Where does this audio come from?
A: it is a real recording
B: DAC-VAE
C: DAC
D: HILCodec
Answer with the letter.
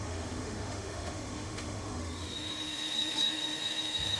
B